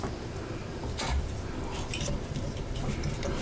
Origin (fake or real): real